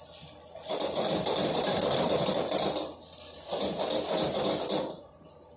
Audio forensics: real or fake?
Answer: real